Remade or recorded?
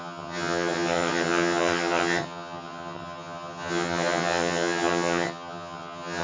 remade